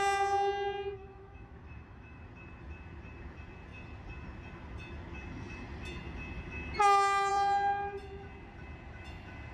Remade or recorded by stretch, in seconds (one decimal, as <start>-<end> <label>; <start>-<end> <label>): 0.0-1.0 recorded; 1.0-2.2 remade; 2.2-9.5 recorded